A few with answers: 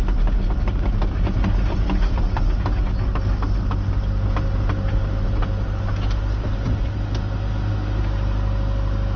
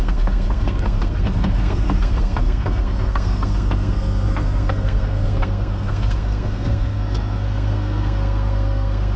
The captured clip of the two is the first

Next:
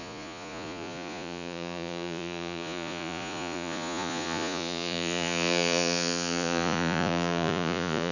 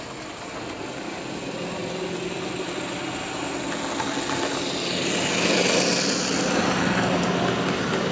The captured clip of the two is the second